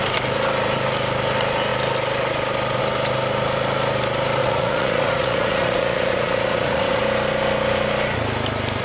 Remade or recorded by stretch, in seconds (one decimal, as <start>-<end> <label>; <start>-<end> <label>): 0.0-4.4 recorded; 4.4-7.0 remade; 7.0-8.8 recorded